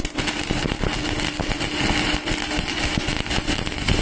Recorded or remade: recorded